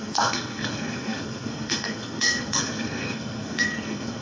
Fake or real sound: fake